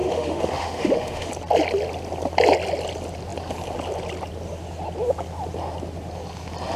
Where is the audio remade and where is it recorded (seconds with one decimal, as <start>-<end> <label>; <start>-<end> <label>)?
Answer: 0.0-1.3 remade; 1.3-6.8 recorded